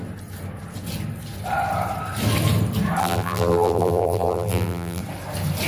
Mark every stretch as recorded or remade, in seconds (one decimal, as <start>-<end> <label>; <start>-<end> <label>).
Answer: 0.0-3.0 recorded; 3.0-5.0 remade; 5.0-5.7 recorded